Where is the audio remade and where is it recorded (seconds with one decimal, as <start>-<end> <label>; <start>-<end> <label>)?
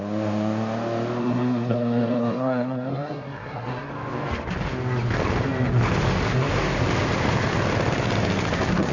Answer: 0.0-1.2 recorded; 1.2-3.9 remade; 3.9-8.9 recorded